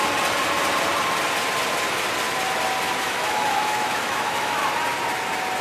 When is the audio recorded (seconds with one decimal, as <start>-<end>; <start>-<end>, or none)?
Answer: 0.0-3.0; 4.6-5.6